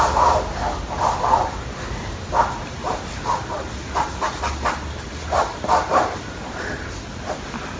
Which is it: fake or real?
real